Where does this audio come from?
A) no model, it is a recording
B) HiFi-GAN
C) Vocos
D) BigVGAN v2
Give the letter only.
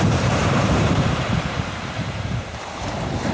D